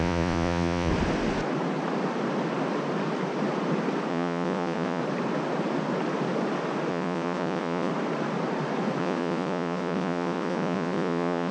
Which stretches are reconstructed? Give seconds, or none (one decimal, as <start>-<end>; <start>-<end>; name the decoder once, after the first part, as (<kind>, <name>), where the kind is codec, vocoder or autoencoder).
0.0-0.9 (vocoder, Vocos); 4.1-5.0; 6.9-7.9; 9.0-11.5